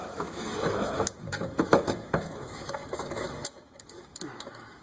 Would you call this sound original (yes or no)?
no